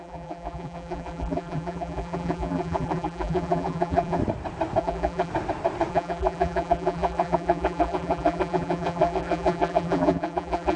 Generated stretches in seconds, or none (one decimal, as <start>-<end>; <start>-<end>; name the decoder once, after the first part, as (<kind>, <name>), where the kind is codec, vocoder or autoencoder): 0.0-4.2 (vocoder, BigVGAN v2); 4.8-5.3; 5.9-10.8